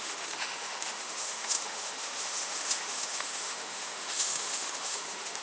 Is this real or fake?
fake